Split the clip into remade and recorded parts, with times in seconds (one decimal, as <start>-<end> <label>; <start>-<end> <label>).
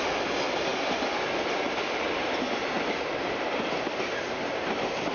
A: 0.0-5.1 recorded